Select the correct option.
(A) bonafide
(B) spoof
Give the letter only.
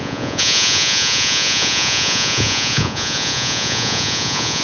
B